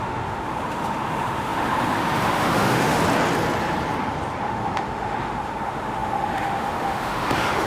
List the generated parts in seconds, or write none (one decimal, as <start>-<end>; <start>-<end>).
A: 0.0-3.0; 4.4-7.7